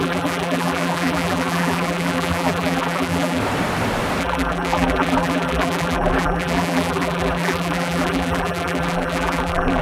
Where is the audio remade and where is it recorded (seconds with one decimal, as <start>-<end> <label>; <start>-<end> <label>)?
0.0-3.4 remade; 3.4-4.2 recorded; 4.2-9.8 remade